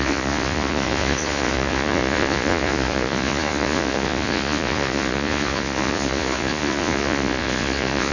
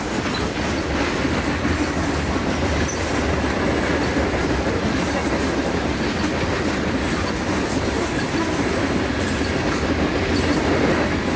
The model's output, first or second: first